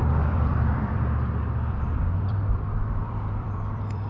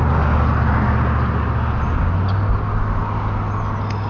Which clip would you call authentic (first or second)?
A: second